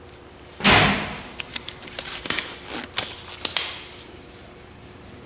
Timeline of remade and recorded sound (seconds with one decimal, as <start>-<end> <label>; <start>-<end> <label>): 0.0-1.5 recorded; 1.5-2.4 remade; 2.4-5.3 recorded